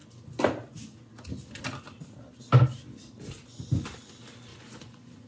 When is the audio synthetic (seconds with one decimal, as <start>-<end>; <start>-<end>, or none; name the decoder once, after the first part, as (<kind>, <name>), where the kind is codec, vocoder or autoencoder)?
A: 4.5-5.3 (vocoder, Vocos)